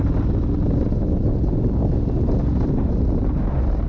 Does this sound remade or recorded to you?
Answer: recorded